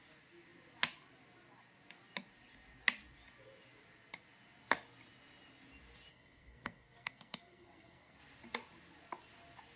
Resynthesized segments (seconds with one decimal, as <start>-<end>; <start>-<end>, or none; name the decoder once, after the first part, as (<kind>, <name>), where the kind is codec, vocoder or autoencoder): 6.1-8.2 (codec, SNAC)